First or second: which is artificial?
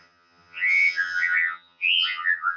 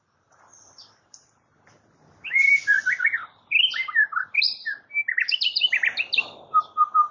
first